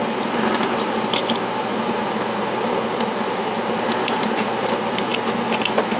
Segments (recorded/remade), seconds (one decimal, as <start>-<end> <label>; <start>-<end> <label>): 0.0-5.1 remade; 5.1-5.6 recorded; 5.6-6.0 remade